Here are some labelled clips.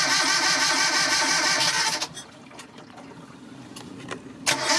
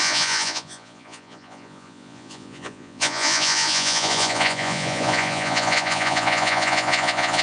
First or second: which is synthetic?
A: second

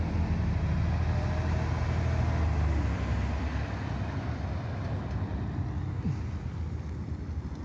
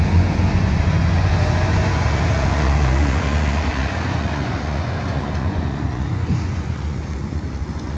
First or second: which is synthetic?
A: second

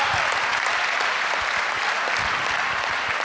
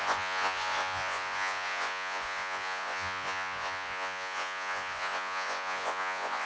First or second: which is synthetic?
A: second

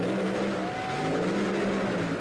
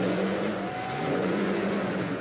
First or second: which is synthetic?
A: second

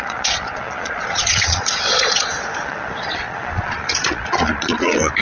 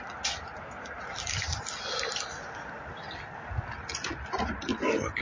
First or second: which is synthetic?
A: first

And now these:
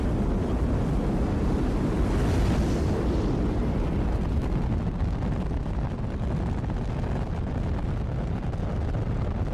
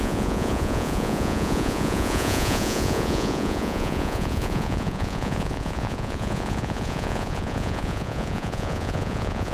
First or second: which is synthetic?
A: second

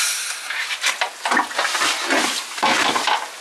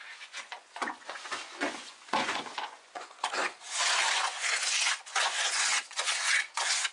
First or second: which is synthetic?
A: second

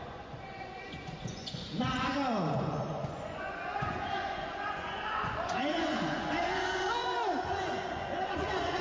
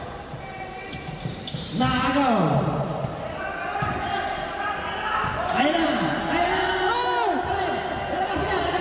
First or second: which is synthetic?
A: first